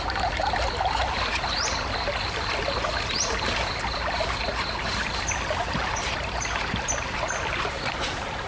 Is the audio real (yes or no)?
yes